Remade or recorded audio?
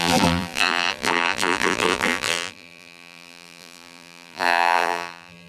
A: remade